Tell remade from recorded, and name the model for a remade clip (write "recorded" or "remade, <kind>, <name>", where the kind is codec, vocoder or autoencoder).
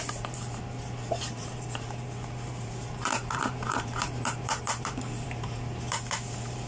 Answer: remade, vocoder, BigVGAN v2